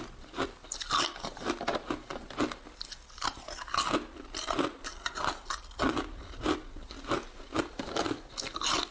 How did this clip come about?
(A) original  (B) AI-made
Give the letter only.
A